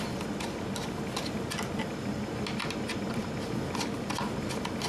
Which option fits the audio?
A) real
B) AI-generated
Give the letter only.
A